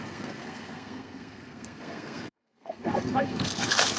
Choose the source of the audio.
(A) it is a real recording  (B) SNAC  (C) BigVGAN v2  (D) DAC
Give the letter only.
B